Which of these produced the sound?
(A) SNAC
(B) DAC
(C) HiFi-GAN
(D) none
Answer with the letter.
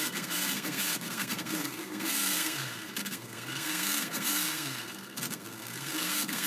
A